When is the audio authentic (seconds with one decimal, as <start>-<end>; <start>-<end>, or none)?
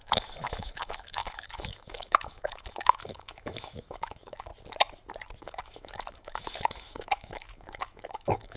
4.5-5.4